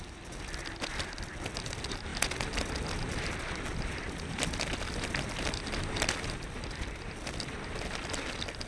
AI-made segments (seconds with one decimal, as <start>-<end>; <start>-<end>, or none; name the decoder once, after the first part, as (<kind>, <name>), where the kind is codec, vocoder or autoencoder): none